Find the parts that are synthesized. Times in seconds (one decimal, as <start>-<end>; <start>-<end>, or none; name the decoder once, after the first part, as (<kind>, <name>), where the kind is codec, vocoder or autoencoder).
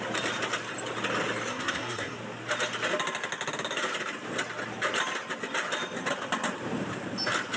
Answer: 1.5-2.2 (codec, SNAC)